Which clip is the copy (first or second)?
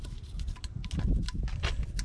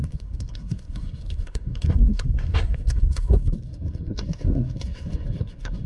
second